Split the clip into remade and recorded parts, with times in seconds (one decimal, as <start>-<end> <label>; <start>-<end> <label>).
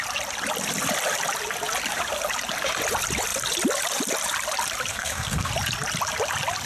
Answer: 0.0-4.9 recorded; 4.9-5.5 remade; 5.5-6.7 recorded